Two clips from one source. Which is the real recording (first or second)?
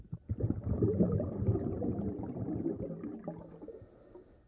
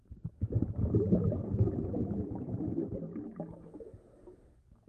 first